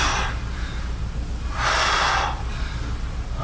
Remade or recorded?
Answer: recorded